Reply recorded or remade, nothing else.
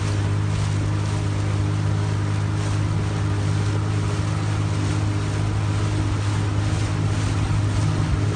recorded